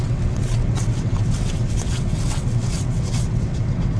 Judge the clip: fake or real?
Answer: fake